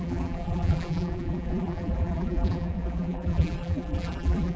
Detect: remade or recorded remade